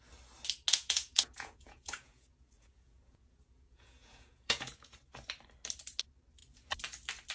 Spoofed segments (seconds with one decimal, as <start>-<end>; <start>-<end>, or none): 0.7-5.0